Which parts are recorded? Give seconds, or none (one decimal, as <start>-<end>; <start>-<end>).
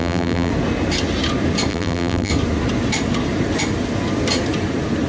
0.5-1.7; 2.3-5.1